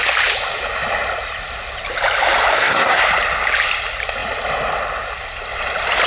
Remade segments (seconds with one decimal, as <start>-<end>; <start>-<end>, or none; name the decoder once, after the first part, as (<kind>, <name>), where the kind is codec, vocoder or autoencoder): 2.5-3.0 (codec, SNAC)